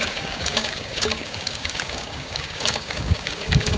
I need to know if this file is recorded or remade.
remade